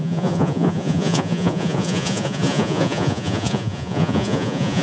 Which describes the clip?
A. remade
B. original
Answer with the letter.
A